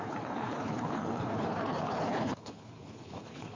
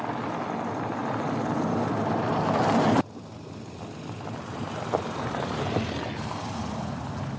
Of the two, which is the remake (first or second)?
first